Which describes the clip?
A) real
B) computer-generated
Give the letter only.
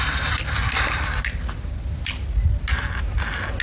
A